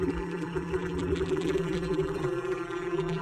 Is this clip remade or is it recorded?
remade